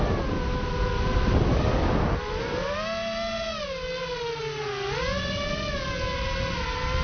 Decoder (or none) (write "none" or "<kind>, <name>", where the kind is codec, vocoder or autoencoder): none